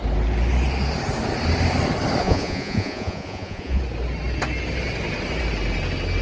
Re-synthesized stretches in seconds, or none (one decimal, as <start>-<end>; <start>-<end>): 2.2-3.8